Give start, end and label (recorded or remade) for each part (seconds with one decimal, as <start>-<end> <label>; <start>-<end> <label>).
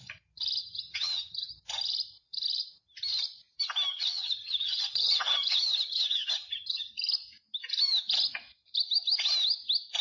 0.0-0.6 recorded; 0.6-1.5 remade; 1.5-3.9 recorded; 3.9-6.9 remade; 6.9-10.0 recorded